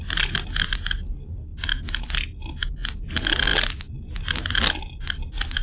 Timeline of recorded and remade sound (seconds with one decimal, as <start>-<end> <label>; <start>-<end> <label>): 0.0-5.6 recorded